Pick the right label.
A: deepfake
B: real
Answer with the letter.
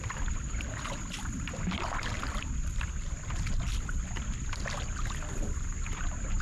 B